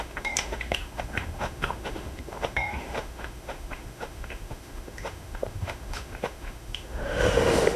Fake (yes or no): yes